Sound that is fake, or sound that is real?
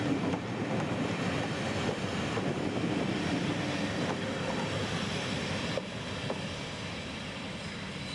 real